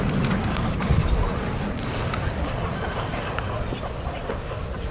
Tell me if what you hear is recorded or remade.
recorded